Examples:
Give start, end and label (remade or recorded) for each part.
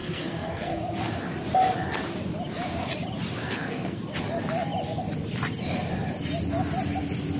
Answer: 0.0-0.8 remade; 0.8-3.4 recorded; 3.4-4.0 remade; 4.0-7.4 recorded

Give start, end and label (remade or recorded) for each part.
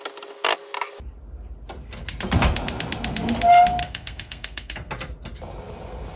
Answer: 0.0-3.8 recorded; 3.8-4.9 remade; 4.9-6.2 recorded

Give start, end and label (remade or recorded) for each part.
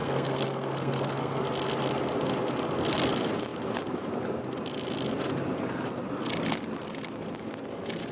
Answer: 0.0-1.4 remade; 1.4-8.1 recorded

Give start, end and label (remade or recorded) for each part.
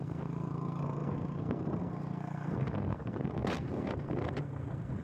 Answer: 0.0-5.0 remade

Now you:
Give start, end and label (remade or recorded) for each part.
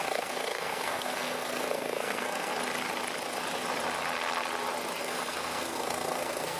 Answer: 0.0-2.5 remade; 2.5-5.0 recorded; 5.0-6.6 remade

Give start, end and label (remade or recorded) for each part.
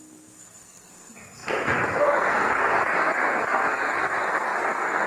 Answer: 0.0-5.1 remade